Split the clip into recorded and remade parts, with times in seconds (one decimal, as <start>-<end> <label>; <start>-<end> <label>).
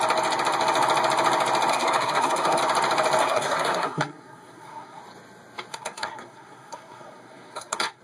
0.0-1.7 recorded; 1.7-2.6 remade; 2.6-3.2 recorded; 3.2-5.0 remade; 5.0-5.7 recorded; 5.7-8.0 remade